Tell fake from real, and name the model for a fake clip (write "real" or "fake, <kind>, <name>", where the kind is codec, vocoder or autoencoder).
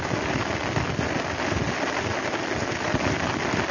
real